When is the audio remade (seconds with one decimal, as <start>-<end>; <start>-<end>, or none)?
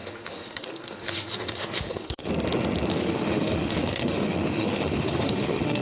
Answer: 0.0-2.3; 2.9-5.8